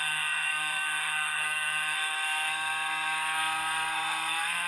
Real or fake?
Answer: fake